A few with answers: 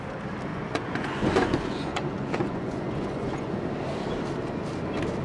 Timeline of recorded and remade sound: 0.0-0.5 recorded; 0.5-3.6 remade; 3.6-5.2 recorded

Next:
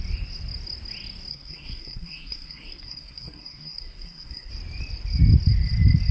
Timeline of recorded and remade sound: 0.0-1.3 recorded; 1.3-4.5 remade; 4.5-6.1 recorded

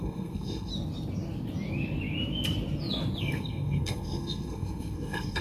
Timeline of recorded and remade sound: 0.0-0.7 remade; 0.7-3.2 recorded; 3.2-5.4 remade

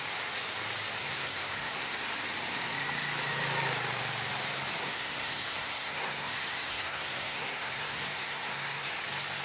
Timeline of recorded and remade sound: 0.0-1.0 recorded; 1.0-1.9 remade; 1.9-4.8 recorded; 4.8-8.9 remade; 8.9-9.4 recorded

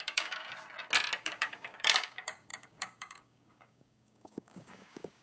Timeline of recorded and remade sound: 0.0-0.5 remade; 0.5-1.2 recorded; 1.2-5.2 remade